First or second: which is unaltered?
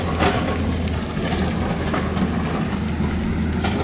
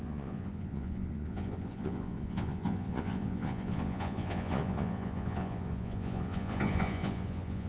first